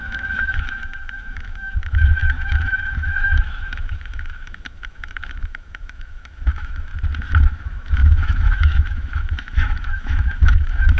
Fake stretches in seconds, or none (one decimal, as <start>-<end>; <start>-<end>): 0.0-6.9; 7.5-11.0